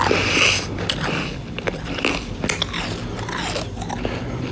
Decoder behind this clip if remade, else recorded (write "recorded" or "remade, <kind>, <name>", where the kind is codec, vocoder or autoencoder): recorded